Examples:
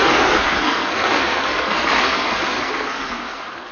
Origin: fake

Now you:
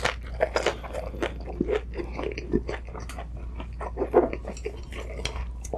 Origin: real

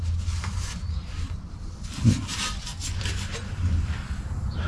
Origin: real